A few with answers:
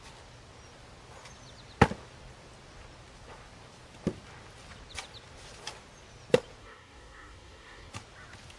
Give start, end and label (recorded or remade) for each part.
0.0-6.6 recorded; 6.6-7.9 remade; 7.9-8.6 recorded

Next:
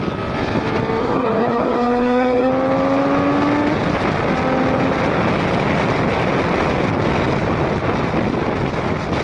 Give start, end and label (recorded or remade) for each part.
0.0-1.0 recorded; 1.0-2.5 remade; 2.5-9.2 recorded

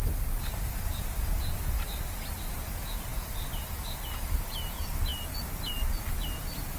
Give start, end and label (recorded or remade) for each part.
0.0-6.8 recorded

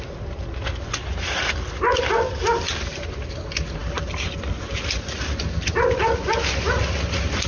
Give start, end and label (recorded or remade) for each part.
0.0-7.5 recorded

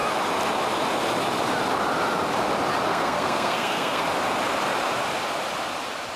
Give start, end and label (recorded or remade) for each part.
0.0-2.9 recorded; 2.9-4.0 remade; 4.0-6.2 recorded